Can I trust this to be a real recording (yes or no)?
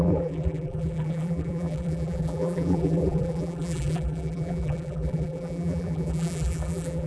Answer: no